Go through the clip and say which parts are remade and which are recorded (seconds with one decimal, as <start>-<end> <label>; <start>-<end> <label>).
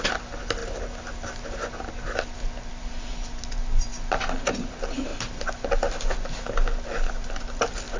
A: 0.0-8.0 recorded